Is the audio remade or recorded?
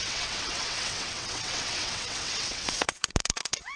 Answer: remade